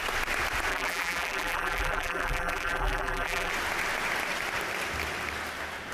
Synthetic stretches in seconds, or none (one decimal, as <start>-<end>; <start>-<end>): 0.7-3.5